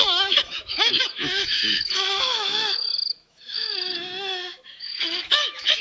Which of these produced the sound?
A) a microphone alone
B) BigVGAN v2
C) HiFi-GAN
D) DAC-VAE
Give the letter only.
D